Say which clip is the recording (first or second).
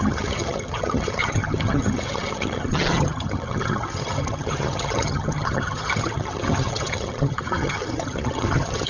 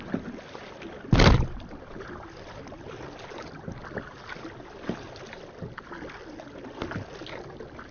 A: second